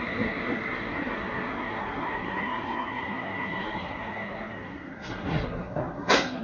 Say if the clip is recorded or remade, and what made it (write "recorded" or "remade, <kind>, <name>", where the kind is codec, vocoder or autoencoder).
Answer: remade, codec, SNAC